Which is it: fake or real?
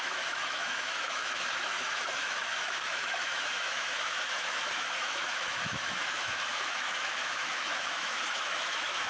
fake